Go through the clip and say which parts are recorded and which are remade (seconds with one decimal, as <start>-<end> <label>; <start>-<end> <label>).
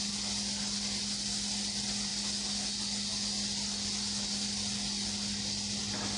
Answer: 0.0-6.2 recorded